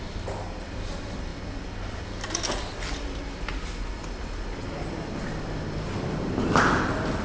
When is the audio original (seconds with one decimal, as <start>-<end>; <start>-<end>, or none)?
0.0-7.2